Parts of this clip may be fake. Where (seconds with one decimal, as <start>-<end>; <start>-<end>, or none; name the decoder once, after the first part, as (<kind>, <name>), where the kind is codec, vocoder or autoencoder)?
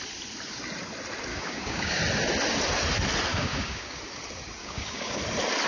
1.3-2.0 (codec, DAC); 3.3-4.0; 4.6-5.2